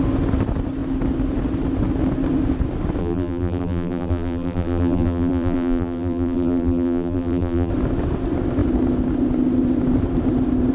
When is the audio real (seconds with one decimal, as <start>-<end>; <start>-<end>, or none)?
0.0-3.0; 7.7-10.7